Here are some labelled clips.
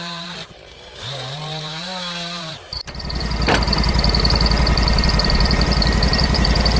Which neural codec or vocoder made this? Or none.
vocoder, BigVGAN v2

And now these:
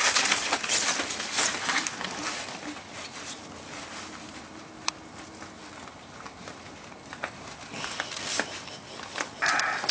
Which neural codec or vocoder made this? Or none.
none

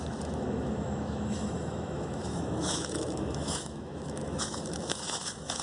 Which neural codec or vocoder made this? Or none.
autoencoder, DAC-VAE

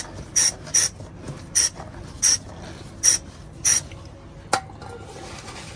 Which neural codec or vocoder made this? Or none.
none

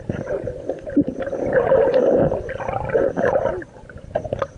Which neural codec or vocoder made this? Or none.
none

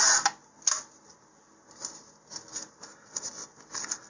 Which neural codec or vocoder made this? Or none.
none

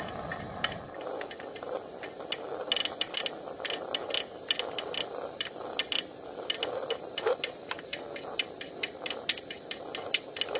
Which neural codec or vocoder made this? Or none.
none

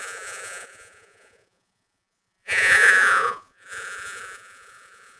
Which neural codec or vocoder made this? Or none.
vocoder, Vocos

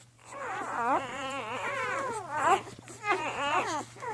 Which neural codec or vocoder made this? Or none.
vocoder, Vocos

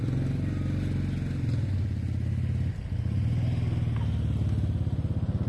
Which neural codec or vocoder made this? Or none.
none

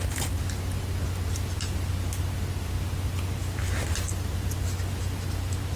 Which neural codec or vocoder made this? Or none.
none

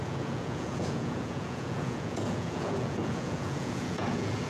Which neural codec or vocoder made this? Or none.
vocoder, Vocos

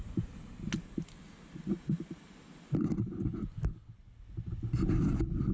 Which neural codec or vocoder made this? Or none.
none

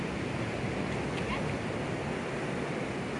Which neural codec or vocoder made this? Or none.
none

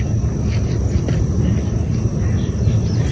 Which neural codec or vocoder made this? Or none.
none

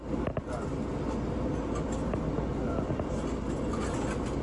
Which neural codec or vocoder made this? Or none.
none